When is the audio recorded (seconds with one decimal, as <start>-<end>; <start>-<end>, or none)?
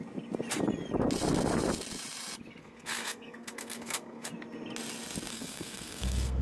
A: 0.0-2.6; 4.3-5.3